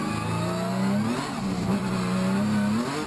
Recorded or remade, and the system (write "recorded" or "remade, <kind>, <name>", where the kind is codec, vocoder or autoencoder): recorded